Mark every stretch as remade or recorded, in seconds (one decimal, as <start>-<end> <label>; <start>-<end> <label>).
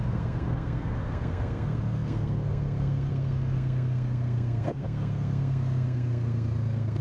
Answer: 0.0-7.0 remade